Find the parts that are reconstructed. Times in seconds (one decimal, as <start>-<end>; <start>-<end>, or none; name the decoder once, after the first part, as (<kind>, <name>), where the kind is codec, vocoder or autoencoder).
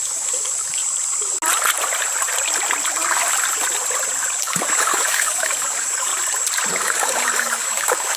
0.0-0.8 (codec, DAC); 4.4-6.1; 6.7-8.2